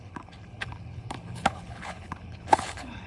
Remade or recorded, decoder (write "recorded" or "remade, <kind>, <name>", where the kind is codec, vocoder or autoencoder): remade, codec, HILCodec